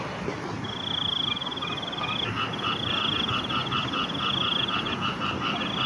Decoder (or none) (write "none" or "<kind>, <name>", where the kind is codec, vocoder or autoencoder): none